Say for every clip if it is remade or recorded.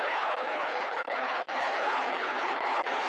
remade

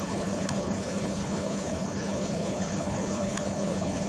remade